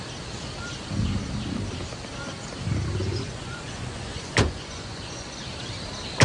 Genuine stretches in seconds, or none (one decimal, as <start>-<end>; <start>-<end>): 0.0-3.0; 5.4-6.2